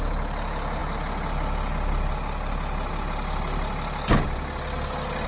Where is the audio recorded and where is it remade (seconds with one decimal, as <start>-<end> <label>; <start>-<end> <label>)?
0.0-5.3 recorded